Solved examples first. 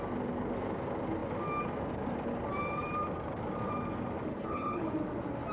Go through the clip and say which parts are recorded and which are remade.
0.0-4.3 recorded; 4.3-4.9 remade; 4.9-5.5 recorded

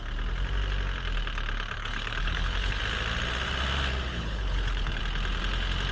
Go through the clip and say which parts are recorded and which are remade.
0.0-1.8 recorded; 1.8-2.8 remade; 2.8-4.1 recorded; 4.1-5.0 remade; 5.0-5.9 recorded

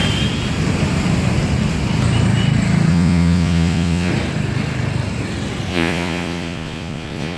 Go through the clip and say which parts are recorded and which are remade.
0.0-2.9 recorded; 2.9-4.1 remade; 4.1-5.7 recorded; 5.7-7.4 remade

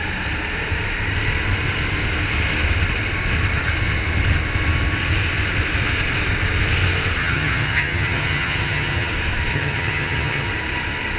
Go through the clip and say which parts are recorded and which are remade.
0.0-7.2 recorded; 7.2-9.1 remade; 9.1-9.5 recorded; 9.5-10.5 remade; 10.5-11.2 recorded

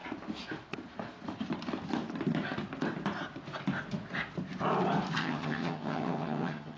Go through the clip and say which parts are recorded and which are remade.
0.0-5.2 recorded; 5.2-6.8 remade

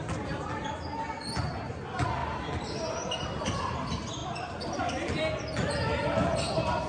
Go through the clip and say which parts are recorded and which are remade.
0.0-6.9 recorded